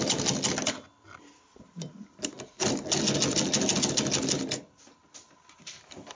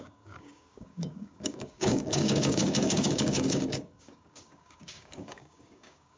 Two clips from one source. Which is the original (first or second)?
first